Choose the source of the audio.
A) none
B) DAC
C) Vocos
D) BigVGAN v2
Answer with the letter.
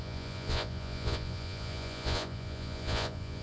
C